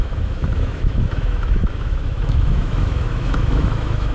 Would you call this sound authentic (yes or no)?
no